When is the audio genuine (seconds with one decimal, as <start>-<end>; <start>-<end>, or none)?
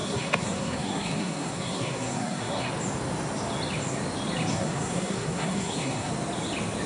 2.7-4.5; 6.1-6.9